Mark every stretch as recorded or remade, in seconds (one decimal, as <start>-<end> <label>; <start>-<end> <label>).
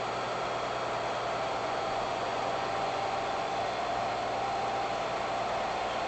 0.0-1.6 recorded; 1.6-3.5 remade; 3.5-6.1 recorded